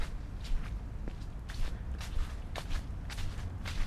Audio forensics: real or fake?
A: real